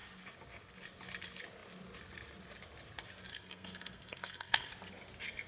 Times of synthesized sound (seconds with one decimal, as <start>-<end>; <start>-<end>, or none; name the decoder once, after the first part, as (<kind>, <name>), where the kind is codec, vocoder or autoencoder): 3.3-4.7 (codec, SNAC)